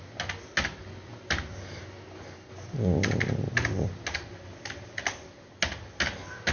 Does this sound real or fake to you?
real